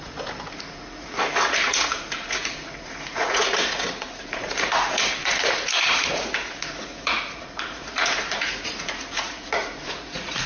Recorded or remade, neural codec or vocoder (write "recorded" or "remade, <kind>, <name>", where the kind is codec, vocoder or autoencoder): remade, vocoder, Vocos